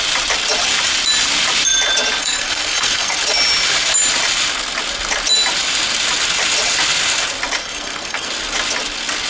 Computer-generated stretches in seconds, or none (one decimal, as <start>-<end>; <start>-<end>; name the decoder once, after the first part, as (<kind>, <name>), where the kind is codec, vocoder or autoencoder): 2.2-3.2 (codec, SNAC); 7.6-8.3